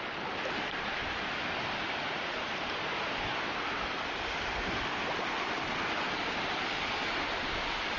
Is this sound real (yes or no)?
no